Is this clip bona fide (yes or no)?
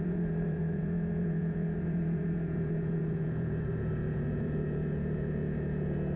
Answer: no